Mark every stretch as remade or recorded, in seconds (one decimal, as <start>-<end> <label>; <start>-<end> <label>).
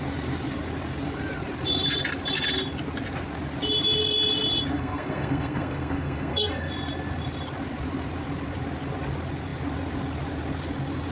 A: 0.0-4.7 recorded; 4.7-6.7 remade; 6.7-11.1 recorded